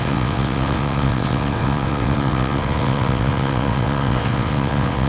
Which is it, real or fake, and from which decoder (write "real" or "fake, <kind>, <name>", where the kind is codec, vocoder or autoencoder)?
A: fake, vocoder, WaveNeXt